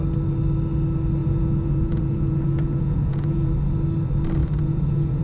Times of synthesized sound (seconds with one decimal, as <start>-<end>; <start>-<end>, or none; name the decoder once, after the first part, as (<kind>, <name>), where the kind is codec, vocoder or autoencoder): 1.2-3.5 (vocoder, Vocos); 4.4-5.2

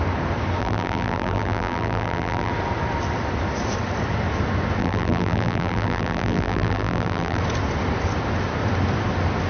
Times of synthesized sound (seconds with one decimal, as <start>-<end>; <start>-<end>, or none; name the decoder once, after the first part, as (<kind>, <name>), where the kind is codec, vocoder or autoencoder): 0.6-2.5 (vocoder, BigVGAN v2); 4.8-7.4

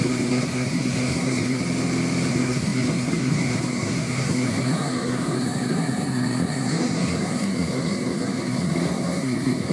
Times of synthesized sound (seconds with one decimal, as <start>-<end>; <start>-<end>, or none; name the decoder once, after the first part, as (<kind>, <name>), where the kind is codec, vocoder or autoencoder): 0.0-1.6 (codec, SNAC); 2.3-9.7

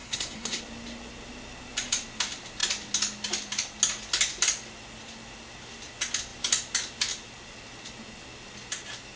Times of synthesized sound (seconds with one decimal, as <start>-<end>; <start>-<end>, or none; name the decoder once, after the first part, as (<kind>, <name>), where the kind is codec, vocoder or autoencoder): 0.0-0.6 (codec, SNAC)

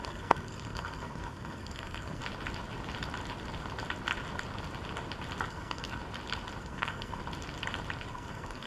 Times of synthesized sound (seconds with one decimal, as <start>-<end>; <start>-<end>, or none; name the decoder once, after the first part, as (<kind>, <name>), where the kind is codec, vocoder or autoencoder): 0.0-2.2 (codec, SNAC); 5.5-6.0; 6.6-7.2; 8.1-8.7

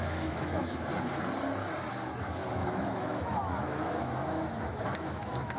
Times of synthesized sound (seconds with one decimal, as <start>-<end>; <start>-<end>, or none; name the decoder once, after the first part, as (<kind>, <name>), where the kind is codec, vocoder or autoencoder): 0.0-0.9 (autoencoder, DAC-VAE); 1.9-5.6

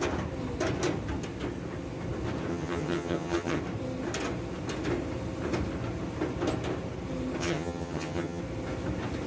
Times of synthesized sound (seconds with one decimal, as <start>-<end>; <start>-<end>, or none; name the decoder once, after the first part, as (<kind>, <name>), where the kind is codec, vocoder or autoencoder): 2.5-3.6 (vocoder, HiFi-GAN); 7.4-8.4

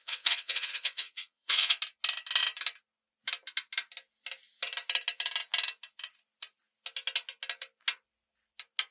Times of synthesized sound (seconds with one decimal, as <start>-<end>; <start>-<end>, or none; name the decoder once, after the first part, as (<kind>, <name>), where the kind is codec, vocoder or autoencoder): 0.0-1.8 (vocoder, WaveNeXt)